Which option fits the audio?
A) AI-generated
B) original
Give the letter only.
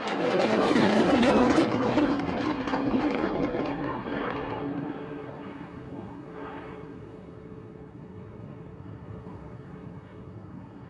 A